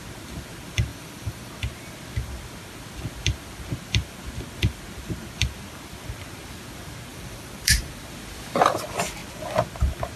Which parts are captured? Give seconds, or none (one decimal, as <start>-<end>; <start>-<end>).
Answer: 0.0-0.9; 1.5-7.1; 7.9-10.2